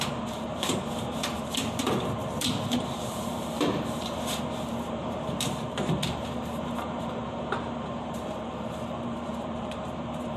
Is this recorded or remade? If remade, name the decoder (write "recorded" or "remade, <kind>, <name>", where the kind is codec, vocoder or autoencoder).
remade, vocoder, BigVGAN v2